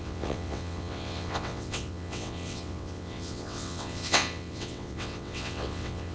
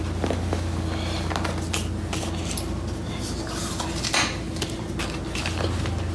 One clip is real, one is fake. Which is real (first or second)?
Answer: second